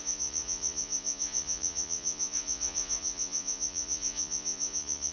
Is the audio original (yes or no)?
no